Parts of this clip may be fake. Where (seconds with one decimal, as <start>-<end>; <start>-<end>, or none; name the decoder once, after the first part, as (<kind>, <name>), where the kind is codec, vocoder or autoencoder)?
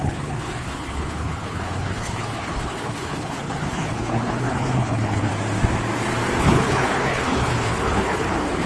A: 0.0-5.3 (codec, HILCodec); 6.4-8.7